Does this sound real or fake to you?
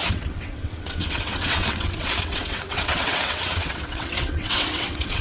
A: fake